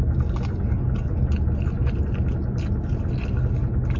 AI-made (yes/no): no